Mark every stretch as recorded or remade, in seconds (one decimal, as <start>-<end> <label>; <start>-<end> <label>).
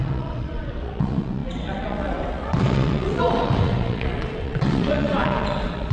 0.0-5.9 remade